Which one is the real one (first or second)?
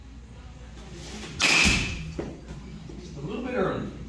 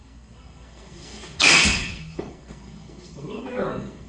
first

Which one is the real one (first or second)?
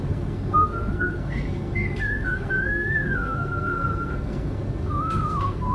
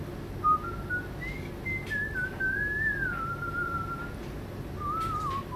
second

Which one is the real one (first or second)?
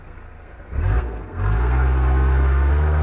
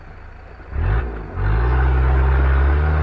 second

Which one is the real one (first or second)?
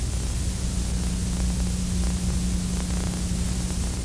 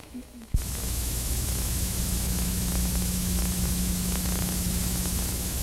first